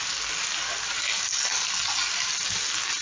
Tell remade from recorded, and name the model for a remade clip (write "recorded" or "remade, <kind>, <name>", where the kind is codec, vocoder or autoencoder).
recorded